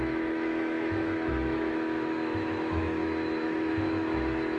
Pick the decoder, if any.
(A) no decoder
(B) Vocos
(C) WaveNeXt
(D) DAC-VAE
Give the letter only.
D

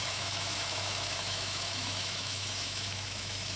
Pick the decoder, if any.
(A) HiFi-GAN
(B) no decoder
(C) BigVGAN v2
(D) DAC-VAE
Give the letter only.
D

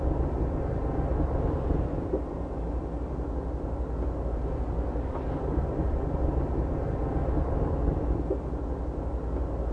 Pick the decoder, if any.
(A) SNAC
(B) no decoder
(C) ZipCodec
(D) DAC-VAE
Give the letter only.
B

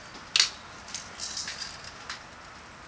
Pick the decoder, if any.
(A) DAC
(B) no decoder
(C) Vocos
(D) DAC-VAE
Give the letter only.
B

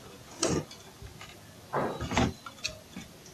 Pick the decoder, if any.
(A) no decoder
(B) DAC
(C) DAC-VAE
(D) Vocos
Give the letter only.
A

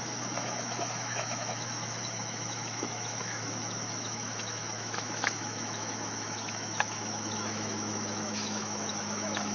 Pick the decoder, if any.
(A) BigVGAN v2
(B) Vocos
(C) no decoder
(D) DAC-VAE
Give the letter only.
D